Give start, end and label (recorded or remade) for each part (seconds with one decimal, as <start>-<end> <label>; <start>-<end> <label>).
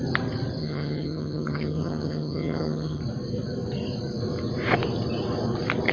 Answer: 0.0-0.6 recorded; 0.6-3.0 remade; 3.0-5.9 recorded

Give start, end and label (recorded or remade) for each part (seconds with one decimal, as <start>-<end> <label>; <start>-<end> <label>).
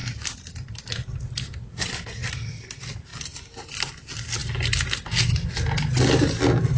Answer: 0.0-6.8 recorded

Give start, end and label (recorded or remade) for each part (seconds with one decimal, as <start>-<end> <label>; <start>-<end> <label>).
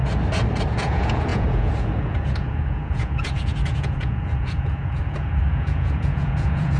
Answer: 0.0-0.7 recorded; 0.7-6.8 remade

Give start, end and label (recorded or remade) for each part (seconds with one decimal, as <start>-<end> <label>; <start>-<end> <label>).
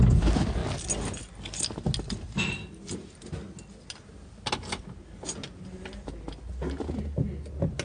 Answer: 0.0-7.8 recorded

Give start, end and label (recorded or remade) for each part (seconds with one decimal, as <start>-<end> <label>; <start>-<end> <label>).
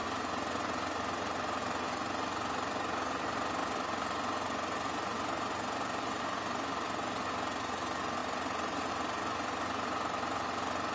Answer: 0.0-8.2 recorded; 8.2-8.9 remade; 8.9-10.9 recorded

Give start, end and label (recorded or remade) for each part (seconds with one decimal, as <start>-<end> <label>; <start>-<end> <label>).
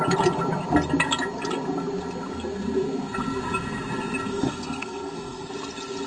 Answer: 0.0-4.3 recorded; 4.3-5.5 remade; 5.5-6.1 recorded